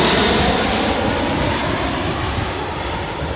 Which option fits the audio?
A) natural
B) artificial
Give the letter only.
B